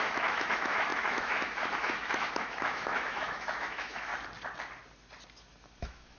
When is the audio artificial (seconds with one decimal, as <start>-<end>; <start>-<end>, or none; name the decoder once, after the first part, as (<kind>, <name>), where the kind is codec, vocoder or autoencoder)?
0.0-4.1 (autoencoder, DAC-VAE); 5.8-6.2